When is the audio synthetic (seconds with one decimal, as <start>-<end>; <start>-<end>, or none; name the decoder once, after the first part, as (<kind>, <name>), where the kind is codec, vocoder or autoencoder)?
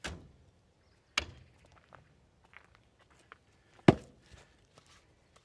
none